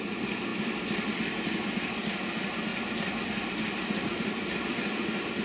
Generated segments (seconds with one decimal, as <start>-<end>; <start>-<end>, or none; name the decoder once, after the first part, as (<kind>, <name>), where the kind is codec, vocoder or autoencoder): none